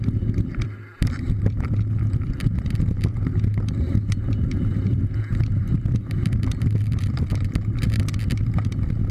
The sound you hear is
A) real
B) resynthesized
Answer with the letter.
B